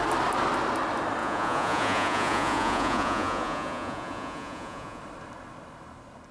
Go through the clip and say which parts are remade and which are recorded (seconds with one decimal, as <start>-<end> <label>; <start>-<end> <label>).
0.0-1.2 recorded; 1.2-5.0 remade; 5.0-6.3 recorded